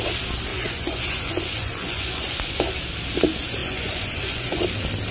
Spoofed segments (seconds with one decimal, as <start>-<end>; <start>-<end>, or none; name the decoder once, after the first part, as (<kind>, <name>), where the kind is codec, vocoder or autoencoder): 0.5-2.7 (vocoder, Vocos); 3.6-4.6